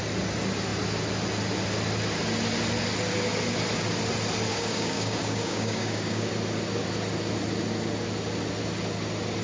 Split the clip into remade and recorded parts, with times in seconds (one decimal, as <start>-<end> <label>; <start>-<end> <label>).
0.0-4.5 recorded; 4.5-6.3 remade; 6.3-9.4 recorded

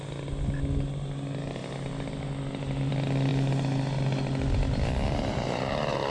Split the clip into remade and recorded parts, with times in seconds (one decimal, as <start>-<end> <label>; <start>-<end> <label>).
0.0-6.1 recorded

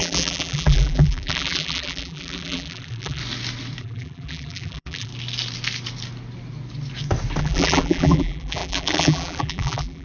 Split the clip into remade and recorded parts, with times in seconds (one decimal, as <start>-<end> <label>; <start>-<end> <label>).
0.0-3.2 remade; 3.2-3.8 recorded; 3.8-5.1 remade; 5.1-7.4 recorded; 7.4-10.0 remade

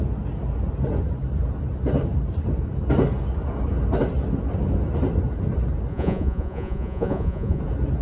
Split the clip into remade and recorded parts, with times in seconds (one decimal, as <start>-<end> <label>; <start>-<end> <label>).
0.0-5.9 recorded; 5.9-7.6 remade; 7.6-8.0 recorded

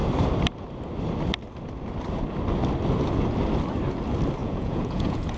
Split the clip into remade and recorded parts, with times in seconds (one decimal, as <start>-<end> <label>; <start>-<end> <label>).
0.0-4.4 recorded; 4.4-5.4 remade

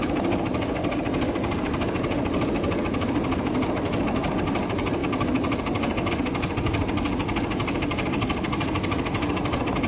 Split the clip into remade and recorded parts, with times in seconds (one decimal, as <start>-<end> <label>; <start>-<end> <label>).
0.0-9.9 recorded

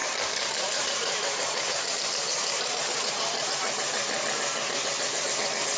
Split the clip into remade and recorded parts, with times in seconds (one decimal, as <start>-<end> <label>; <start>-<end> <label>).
0.0-4.0 remade; 4.0-5.8 recorded